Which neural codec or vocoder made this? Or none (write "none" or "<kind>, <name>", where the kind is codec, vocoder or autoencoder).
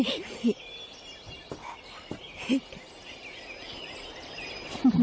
none